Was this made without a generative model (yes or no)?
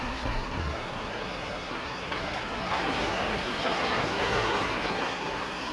no